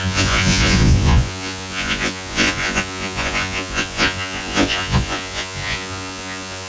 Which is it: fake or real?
fake